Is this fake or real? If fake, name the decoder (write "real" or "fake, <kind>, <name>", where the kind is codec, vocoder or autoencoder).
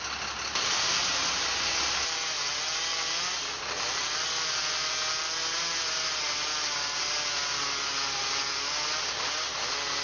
real